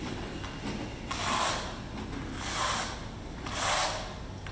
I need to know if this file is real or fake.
real